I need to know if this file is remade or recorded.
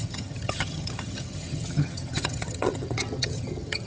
remade